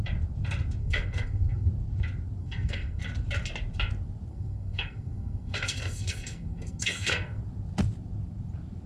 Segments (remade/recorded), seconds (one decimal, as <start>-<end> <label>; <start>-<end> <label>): 0.0-0.8 recorded; 0.8-1.7 remade; 1.7-2.4 recorded; 2.4-3.0 remade; 3.0-4.3 recorded; 4.3-7.4 remade; 7.4-8.9 recorded